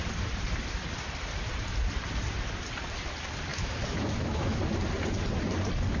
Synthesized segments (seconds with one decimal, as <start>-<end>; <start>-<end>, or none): 3.5-4.6